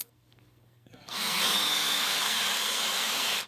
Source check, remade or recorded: remade